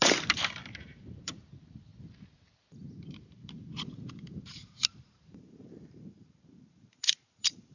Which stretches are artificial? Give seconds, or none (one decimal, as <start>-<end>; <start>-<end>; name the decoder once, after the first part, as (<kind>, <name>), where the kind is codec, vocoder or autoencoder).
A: 0.0-1.9 (vocoder, BigVGAN v2); 3.2-7.7